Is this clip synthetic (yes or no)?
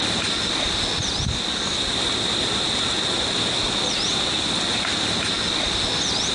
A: no